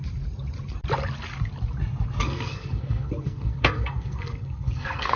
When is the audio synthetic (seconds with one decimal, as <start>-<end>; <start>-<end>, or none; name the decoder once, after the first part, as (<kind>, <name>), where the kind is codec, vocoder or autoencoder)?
2.2-5.2 (codec, SNAC)